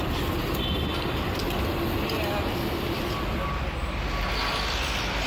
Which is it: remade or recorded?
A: recorded